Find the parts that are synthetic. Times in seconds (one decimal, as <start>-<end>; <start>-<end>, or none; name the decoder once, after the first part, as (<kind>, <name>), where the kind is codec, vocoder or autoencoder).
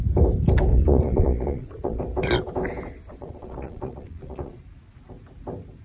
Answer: 0.7-2.0 (vocoder, Vocos); 3.1-4.6